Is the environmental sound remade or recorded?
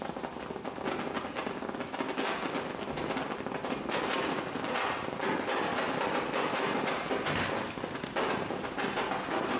recorded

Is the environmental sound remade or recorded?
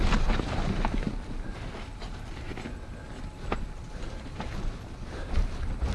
recorded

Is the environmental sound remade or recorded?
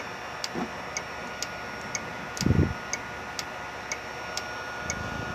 recorded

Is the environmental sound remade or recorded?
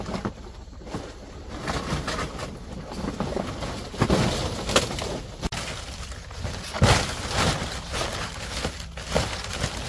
recorded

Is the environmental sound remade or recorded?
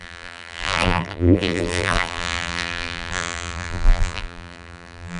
remade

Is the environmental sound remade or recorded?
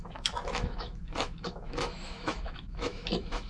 remade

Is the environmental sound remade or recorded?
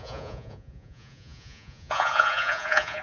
remade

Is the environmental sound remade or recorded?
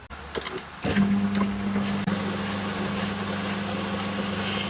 recorded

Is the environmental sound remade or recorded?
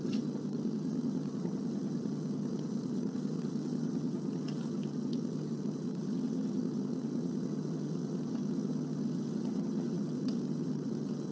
remade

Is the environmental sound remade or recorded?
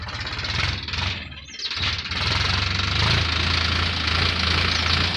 recorded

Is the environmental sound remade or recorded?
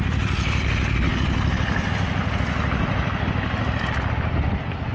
recorded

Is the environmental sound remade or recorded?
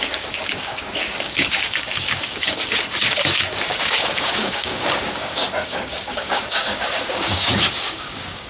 remade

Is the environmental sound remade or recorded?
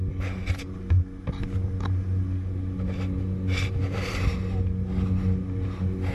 recorded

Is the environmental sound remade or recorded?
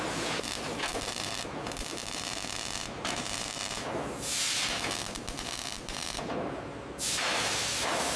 recorded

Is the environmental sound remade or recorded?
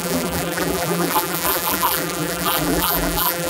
remade